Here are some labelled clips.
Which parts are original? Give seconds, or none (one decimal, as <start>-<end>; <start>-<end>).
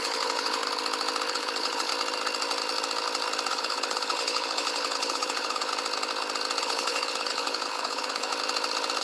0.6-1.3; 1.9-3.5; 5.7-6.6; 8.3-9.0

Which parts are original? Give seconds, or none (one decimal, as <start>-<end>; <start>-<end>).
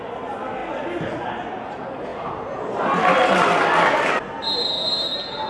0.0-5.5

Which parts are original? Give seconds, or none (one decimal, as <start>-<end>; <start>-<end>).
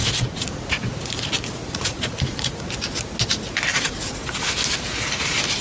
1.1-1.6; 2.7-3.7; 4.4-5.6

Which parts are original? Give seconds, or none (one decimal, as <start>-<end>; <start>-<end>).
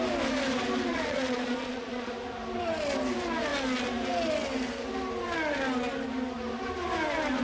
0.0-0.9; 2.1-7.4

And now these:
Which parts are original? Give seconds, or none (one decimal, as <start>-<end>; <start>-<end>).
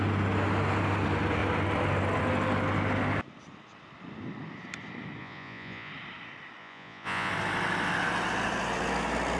0.0-5.2; 5.9-6.6; 7.3-9.4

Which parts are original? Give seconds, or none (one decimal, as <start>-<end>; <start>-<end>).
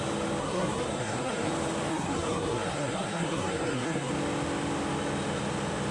0.0-0.4; 1.5-1.9; 4.1-5.9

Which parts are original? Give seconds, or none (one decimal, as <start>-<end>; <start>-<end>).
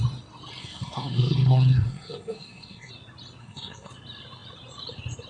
0.0-0.6; 2.9-3.4; 3.9-5.3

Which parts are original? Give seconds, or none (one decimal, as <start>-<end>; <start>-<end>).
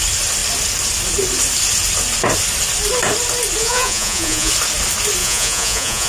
0.0-3.6; 4.5-5.2